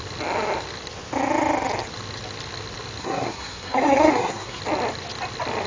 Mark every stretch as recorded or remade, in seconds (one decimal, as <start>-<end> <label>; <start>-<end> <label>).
0.0-3.0 recorded; 3.0-4.6 remade; 4.6-5.7 recorded